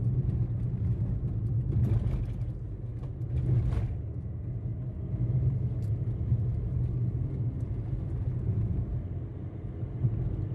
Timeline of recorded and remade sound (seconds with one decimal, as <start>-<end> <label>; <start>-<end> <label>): 0.0-10.5 recorded